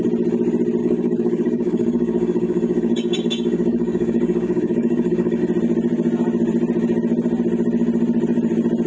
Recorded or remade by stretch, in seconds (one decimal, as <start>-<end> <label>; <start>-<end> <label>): 0.0-0.8 recorded; 0.8-5.4 remade; 5.4-8.9 recorded